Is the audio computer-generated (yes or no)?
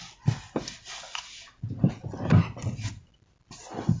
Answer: no